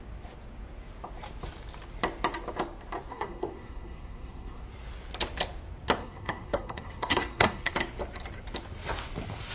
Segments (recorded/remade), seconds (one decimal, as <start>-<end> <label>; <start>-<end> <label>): 0.0-3.1 recorded; 3.1-4.6 remade; 4.6-6.0 recorded; 6.0-7.7 remade; 7.7-9.5 recorded